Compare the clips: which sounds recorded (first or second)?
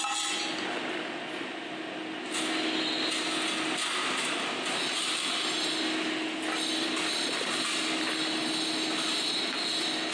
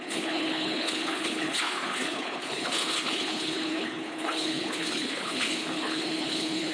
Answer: first